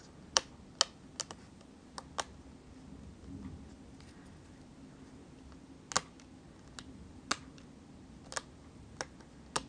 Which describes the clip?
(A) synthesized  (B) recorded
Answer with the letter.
B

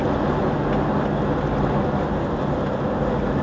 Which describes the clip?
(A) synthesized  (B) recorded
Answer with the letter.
B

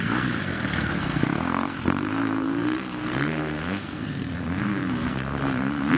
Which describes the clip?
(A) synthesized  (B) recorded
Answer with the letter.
A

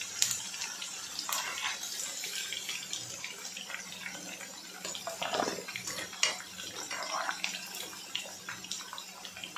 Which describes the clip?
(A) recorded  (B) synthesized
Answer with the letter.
A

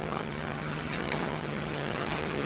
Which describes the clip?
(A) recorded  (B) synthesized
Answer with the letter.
B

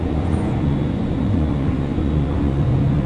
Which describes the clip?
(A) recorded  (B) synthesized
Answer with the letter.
B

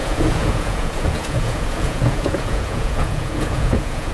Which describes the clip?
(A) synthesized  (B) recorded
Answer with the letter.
A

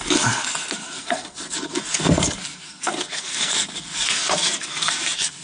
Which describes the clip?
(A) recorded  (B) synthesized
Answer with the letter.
B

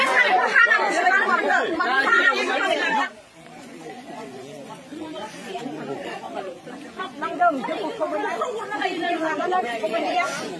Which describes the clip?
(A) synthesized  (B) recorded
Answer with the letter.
A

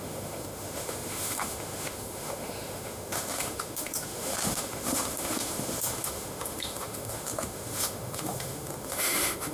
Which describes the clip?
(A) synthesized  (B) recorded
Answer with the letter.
A